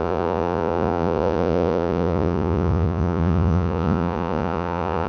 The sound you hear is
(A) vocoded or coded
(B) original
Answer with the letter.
A